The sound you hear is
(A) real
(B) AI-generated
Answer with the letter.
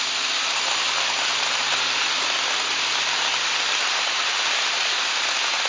A